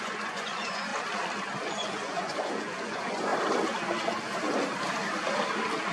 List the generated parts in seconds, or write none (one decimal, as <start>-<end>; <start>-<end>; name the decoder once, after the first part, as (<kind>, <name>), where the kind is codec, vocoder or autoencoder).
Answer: 0.0-0.9 (vocoder, Vocos); 1.7-3.3